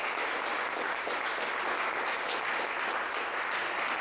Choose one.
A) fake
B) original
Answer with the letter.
B